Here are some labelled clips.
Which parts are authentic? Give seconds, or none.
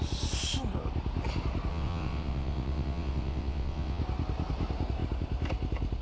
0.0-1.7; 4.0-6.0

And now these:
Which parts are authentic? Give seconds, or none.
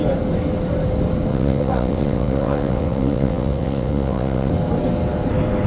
0.0-1.3; 4.5-5.7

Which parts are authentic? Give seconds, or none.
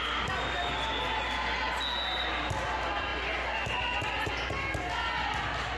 0.0-5.8